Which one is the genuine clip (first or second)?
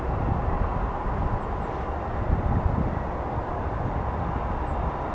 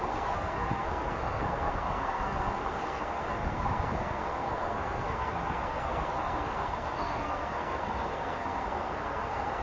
first